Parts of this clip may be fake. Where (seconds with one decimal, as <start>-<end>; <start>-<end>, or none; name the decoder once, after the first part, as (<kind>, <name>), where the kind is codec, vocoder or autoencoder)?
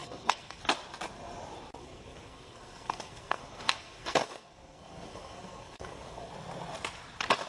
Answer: 0.0-0.6 (codec, SNAC); 1.8-6.3